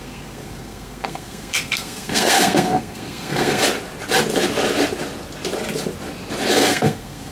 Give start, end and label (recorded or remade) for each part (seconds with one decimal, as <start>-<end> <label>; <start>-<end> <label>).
0.0-3.6 remade; 3.6-6.5 recorded; 6.5-7.3 remade